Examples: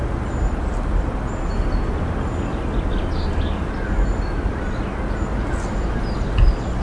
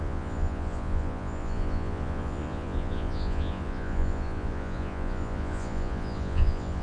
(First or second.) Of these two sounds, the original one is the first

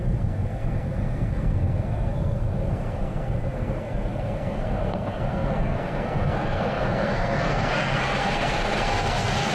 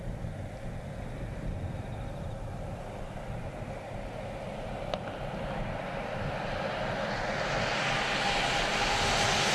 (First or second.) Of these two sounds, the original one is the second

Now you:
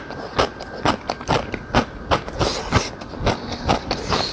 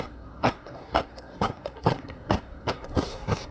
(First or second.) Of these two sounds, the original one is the first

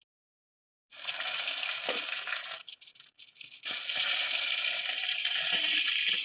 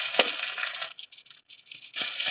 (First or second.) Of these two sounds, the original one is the second